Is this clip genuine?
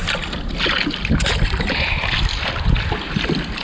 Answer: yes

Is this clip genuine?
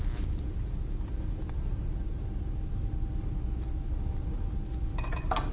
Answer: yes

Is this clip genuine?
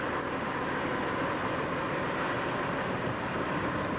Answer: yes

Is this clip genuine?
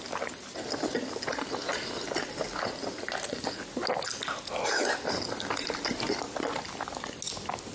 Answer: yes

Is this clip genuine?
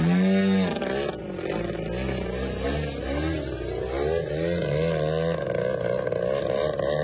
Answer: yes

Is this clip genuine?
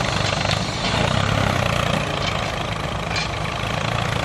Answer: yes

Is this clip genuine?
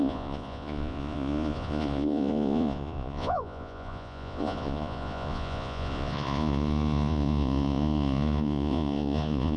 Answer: no